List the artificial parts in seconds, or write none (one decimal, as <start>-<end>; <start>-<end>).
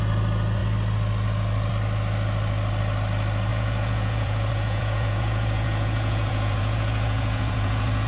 3.5-8.1